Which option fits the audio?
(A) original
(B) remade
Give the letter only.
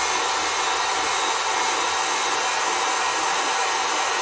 A